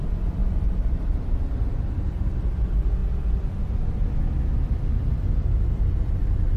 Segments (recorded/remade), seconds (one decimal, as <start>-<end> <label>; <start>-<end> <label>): 0.0-0.4 recorded; 0.4-1.5 remade; 1.5-6.6 recorded

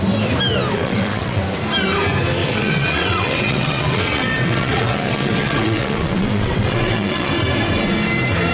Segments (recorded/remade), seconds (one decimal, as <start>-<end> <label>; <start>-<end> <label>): 0.0-0.7 recorded; 0.7-1.4 remade; 1.4-2.4 recorded; 2.4-7.3 remade; 7.3-8.5 recorded